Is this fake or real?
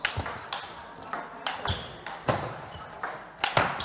real